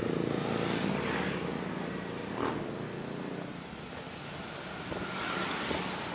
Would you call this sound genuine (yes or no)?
yes